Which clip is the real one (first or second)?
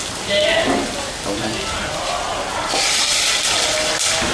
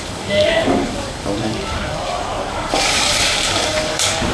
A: first